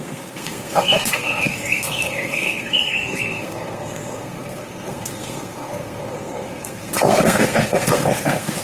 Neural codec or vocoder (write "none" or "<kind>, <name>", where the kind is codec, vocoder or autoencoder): codec, SNAC